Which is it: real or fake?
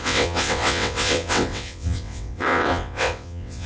fake